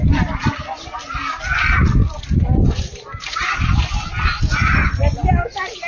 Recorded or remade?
recorded